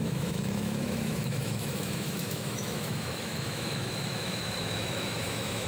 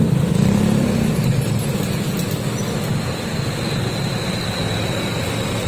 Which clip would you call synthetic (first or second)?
first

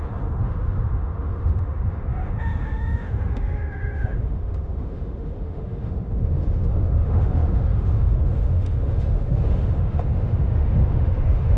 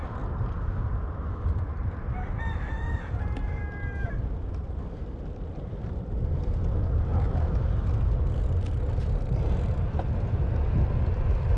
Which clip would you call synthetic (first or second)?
first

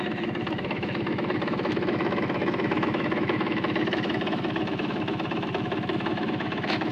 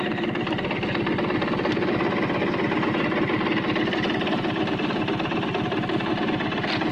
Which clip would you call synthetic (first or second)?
first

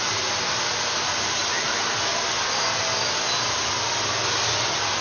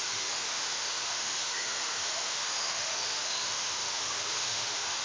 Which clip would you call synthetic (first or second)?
second